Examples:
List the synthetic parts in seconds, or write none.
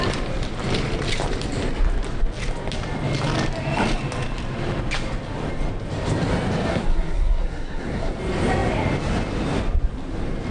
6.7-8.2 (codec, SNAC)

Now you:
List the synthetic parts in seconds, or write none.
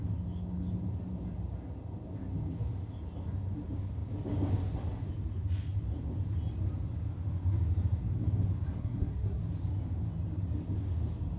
8.8-9.4 (codec, SNAC)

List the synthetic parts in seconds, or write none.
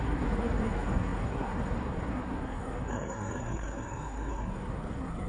0.0-5.3 (codec, SNAC)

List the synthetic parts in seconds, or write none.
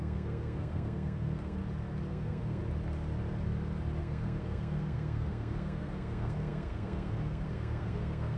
0.0-1.6 (codec, SNAC); 2.1-2.6; 4.0-8.4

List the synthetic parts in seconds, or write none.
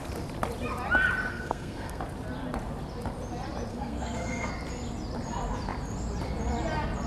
1.3-2.0 (codec, SNAC); 3.7-4.5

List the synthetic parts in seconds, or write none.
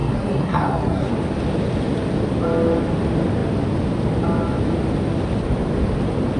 0.0-1.1 (codec, SNAC)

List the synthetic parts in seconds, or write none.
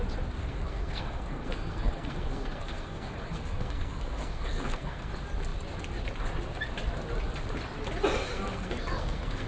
0.4-5.1 (codec, SNAC); 8.3-9.5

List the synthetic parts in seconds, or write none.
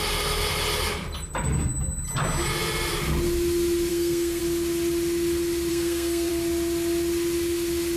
3.9-4.4 (codec, SNAC); 5.7-6.3